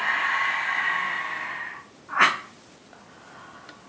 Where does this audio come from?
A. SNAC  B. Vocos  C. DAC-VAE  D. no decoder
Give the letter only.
D